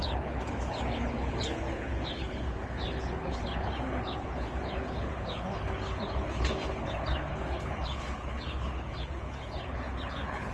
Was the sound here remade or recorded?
remade